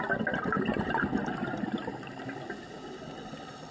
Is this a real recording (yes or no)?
yes